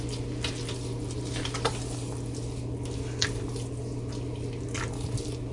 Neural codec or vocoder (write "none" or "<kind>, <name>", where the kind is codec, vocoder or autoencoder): none